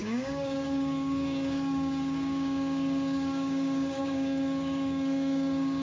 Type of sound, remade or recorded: remade